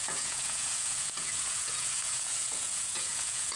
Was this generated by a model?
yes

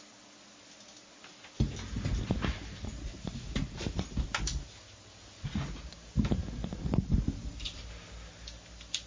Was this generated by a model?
no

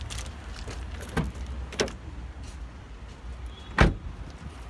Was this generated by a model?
no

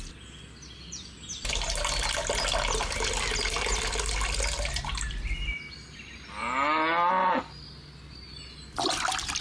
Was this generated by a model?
no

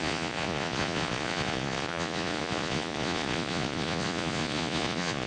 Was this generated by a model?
yes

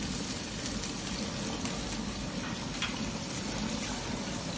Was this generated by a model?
no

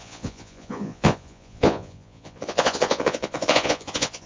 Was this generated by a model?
yes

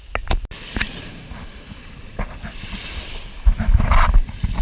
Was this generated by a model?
no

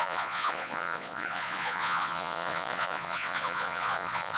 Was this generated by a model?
yes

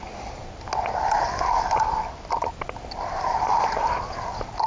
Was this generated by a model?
no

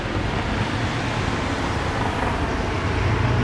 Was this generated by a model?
no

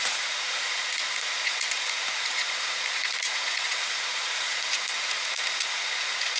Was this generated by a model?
yes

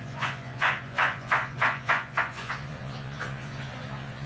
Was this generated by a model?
yes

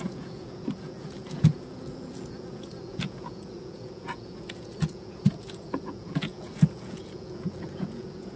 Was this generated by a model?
yes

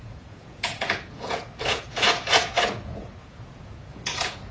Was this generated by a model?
yes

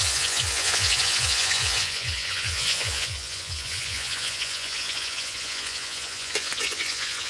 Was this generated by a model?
yes